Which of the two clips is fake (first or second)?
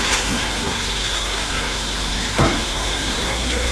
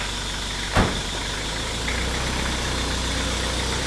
first